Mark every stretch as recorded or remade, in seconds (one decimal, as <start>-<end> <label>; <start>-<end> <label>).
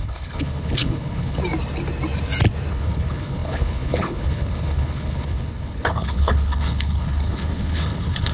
0.0-1.4 remade; 1.4-2.7 recorded; 2.7-8.3 remade